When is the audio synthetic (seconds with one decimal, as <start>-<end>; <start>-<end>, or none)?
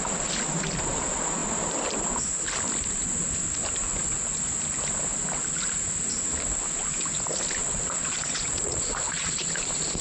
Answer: 7.6-9.5